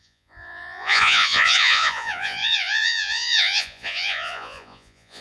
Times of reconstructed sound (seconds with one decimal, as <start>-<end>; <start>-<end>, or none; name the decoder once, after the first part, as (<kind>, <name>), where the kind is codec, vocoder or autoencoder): 0.0-5.2 (vocoder, Vocos)